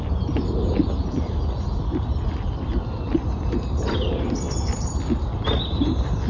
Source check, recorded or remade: recorded